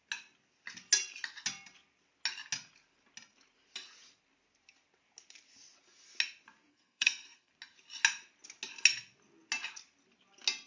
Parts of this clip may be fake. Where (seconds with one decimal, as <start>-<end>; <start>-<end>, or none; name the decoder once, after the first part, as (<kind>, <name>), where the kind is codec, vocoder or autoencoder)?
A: 6.7-7.5 (codec, SNAC)